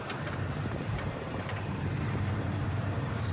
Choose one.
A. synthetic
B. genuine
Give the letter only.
A